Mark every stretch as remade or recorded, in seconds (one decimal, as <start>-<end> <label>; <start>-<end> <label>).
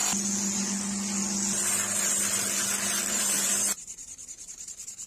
0.0-3.1 recorded; 3.1-5.1 remade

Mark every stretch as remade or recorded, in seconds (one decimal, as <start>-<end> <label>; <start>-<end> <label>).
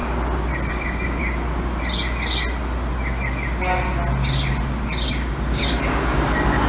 0.0-0.7 recorded; 0.7-1.2 remade; 1.2-5.1 recorded; 5.1-6.7 remade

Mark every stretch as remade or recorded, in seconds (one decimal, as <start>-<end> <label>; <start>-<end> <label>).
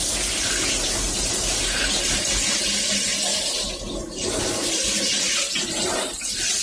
0.0-1.6 remade; 1.6-3.3 recorded; 3.3-6.1 remade; 6.1-6.6 recorded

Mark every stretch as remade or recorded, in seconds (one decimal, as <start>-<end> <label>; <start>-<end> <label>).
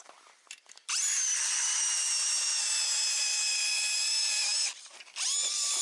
0.0-5.8 recorded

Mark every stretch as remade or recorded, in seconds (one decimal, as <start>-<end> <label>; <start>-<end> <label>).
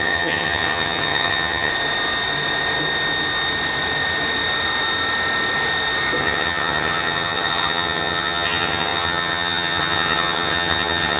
0.0-1.7 remade; 1.7-6.2 recorded; 6.2-11.2 remade